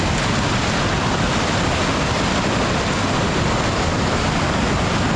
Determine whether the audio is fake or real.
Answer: real